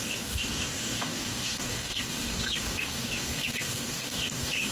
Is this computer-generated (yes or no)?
yes